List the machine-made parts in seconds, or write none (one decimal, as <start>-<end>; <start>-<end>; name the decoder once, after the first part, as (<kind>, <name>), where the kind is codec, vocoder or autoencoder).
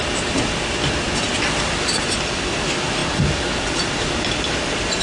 none